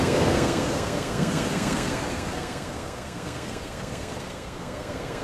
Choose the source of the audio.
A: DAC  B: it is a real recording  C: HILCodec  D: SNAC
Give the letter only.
D